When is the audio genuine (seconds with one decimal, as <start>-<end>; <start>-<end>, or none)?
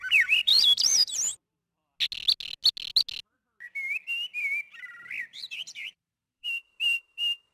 1.3-5.2